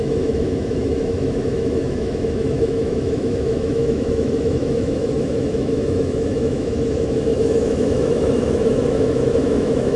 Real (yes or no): no